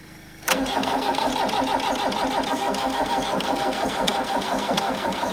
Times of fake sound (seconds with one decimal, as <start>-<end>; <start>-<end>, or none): 0.0-1.3; 2.5-5.3